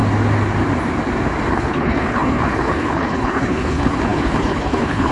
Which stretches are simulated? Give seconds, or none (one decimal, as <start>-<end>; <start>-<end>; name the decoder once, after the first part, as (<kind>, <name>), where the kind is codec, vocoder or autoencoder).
1.5-5.1 (codec, HILCodec)